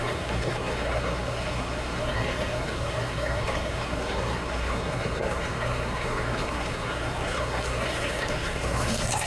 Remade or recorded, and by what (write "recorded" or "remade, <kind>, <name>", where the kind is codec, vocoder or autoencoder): remade, codec, SNAC